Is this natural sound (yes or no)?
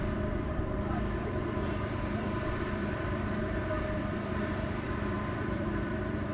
no